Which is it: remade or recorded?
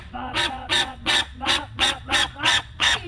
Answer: remade